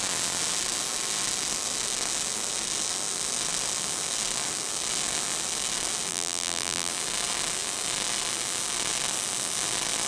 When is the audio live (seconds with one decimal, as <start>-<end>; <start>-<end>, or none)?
0.0-6.1; 6.9-10.1